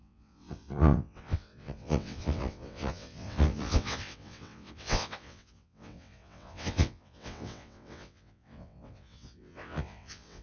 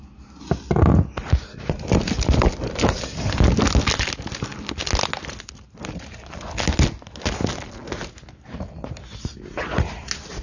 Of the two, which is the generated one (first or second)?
first